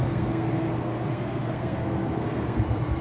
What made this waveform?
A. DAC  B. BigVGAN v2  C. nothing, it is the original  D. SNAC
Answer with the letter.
D